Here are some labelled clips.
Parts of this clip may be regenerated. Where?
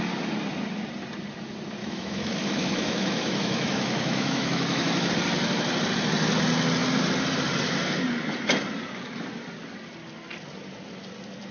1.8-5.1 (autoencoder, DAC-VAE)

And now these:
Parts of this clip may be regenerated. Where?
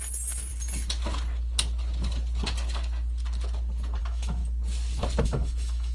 0.0-0.5 (autoencoder, DAC-VAE); 4.0-4.4; 5.2-5.9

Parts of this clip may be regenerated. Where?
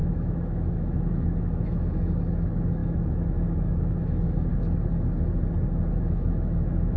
0.0-4.5 (autoencoder, DAC-VAE); 6.0-7.0